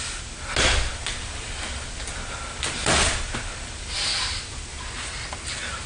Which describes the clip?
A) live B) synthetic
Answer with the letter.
A